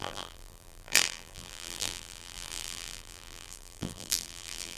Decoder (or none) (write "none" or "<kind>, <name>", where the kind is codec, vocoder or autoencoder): vocoder, BigVGAN v2